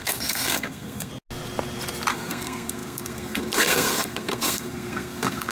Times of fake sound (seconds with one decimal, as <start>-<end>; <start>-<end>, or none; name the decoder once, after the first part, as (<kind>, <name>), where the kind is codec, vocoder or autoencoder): 0.0-1.1 (codec, SNAC); 2.1-5.5